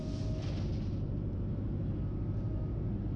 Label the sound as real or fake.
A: real